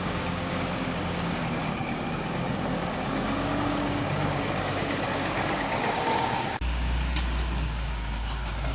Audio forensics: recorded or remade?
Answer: remade